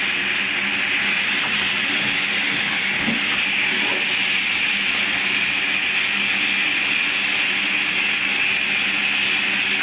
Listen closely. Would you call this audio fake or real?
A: real